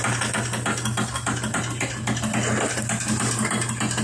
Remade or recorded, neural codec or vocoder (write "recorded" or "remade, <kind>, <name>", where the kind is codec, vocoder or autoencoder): recorded